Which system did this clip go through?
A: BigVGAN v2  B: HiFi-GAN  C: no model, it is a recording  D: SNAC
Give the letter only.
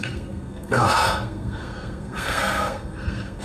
D